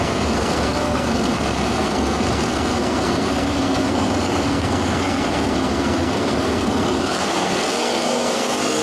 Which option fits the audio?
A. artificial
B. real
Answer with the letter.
A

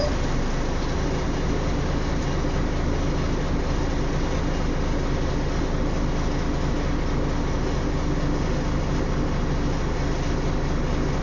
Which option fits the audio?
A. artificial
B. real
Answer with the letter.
B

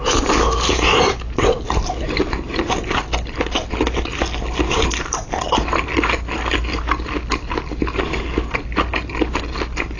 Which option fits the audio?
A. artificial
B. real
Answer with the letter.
B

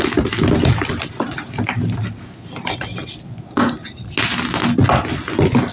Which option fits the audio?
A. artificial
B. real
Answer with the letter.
B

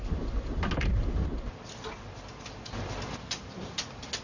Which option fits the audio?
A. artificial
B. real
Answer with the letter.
B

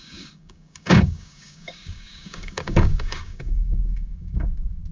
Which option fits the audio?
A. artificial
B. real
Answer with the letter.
A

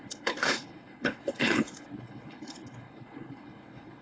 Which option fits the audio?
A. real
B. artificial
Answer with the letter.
B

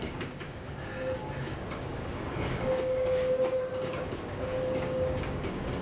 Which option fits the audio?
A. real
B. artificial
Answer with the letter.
B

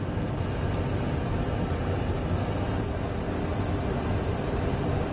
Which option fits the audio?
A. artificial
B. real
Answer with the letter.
B